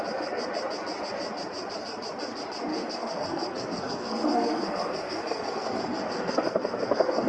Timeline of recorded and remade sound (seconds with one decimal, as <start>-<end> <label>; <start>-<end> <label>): 0.0-2.7 recorded; 2.7-7.3 remade